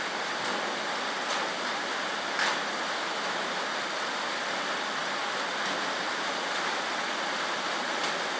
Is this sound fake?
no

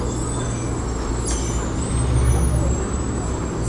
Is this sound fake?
no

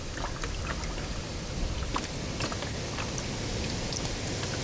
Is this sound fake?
no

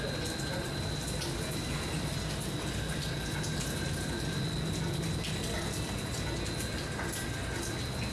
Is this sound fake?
no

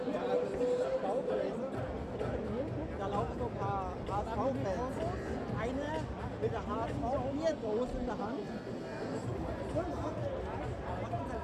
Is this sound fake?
no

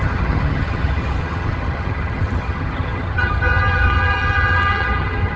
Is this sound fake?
yes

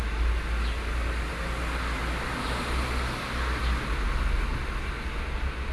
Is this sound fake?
no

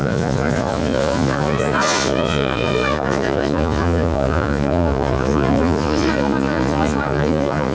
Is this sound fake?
yes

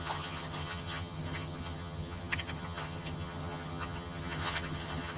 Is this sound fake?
yes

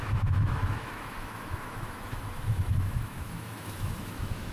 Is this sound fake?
yes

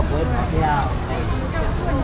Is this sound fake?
no